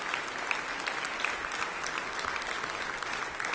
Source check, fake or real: real